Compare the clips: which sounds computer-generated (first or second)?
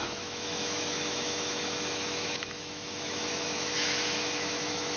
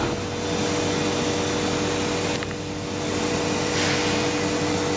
first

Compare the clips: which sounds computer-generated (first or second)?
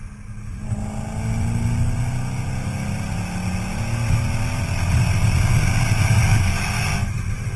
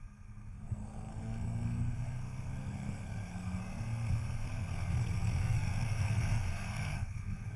second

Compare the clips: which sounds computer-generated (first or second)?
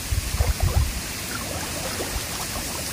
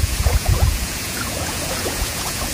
second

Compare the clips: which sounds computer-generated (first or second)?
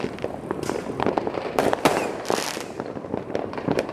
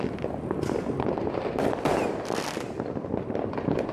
first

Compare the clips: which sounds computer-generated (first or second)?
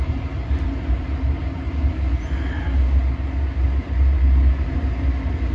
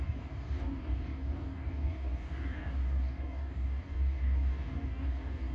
second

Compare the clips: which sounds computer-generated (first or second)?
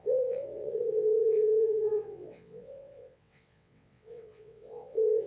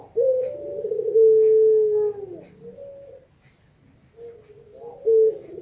first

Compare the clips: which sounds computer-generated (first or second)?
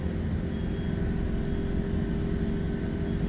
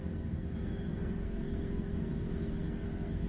second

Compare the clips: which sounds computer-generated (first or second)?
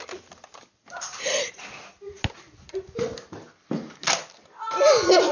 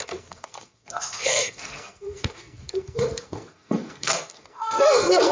second